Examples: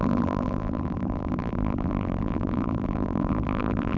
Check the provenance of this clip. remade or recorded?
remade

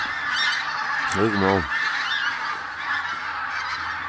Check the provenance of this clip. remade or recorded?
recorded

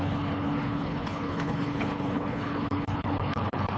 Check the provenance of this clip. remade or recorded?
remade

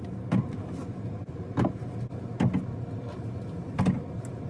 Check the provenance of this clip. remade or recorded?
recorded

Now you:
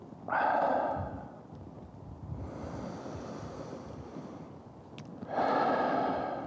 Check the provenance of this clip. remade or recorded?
recorded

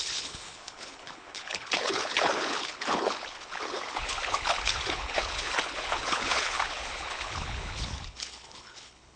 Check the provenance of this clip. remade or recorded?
remade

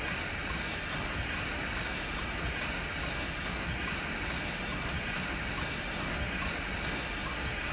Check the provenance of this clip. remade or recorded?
recorded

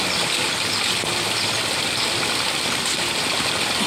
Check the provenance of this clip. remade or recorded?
recorded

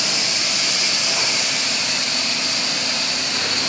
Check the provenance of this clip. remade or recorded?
recorded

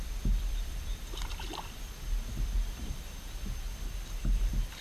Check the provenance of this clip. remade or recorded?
remade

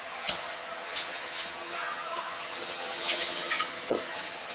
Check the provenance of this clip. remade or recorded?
remade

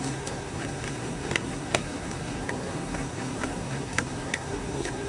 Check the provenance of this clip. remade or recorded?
remade